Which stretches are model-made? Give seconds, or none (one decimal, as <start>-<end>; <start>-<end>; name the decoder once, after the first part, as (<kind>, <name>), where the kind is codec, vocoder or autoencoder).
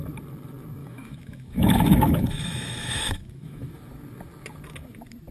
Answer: 0.8-3.7 (autoencoder, DAC-VAE)